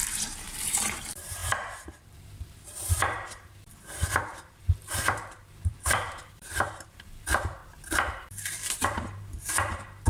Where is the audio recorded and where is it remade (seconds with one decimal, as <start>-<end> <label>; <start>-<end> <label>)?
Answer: 0.0-7.6 remade; 7.6-8.1 recorded; 8.1-10.1 remade